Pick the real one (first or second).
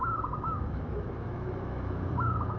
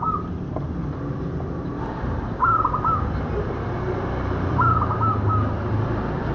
second